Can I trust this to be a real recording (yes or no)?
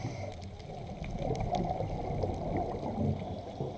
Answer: yes